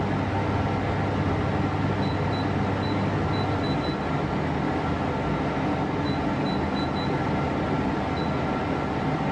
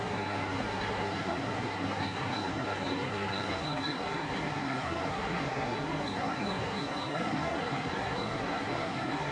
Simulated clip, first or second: second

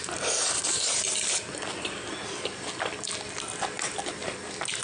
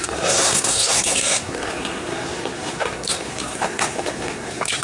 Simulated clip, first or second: second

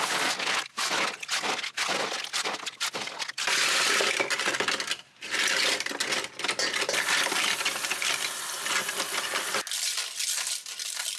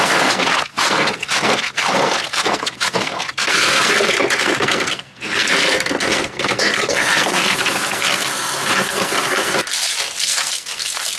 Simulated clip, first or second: second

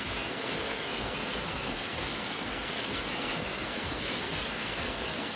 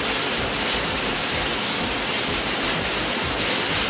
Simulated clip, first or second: first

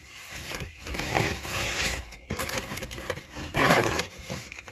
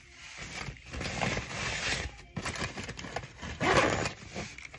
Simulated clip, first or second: first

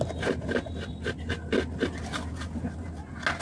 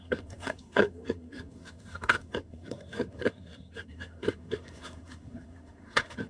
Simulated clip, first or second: second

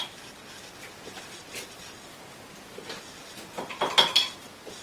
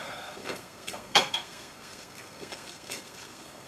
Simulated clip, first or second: second